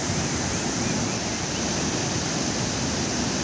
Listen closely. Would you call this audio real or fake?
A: real